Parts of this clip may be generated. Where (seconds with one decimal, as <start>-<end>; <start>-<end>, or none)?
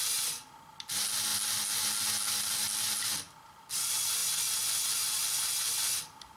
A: none